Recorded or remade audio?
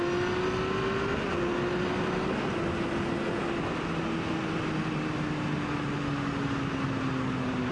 recorded